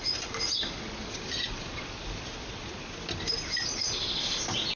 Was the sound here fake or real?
real